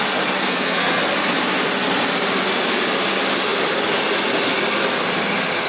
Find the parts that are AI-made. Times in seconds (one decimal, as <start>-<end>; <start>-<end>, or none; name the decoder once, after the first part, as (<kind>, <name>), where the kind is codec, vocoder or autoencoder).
0.4-1.0 (codec, SNAC)